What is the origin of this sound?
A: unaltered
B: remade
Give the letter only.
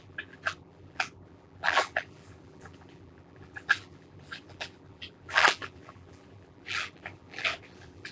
B